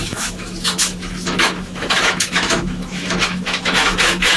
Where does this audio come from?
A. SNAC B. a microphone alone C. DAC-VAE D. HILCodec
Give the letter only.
C